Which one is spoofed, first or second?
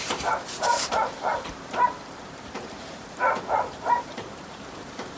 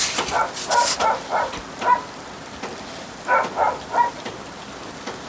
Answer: first